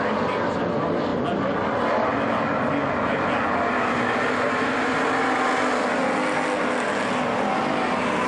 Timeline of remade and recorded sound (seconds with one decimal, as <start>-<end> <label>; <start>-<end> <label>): 0.0-8.3 recorded